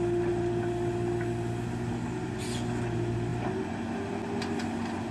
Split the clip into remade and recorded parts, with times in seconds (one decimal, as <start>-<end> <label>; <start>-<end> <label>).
0.0-5.1 recorded